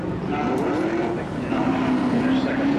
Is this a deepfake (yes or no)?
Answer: no